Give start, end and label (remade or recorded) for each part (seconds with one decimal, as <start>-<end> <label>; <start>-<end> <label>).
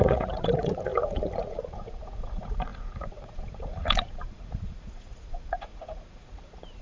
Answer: 0.0-6.8 remade